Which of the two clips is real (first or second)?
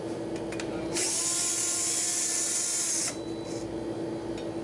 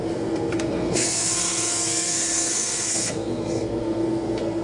first